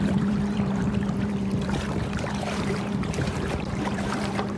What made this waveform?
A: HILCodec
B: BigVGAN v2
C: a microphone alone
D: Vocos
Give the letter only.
B